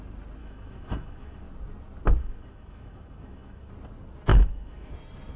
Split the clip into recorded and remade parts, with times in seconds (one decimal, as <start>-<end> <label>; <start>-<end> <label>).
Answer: 0.0-0.4 recorded; 0.4-1.4 remade; 1.4-2.2 recorded; 2.2-3.7 remade; 3.7-4.3 recorded; 4.3-4.9 remade; 4.9-5.4 recorded